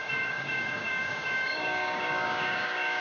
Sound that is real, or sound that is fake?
fake